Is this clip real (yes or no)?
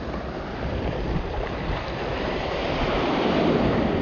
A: yes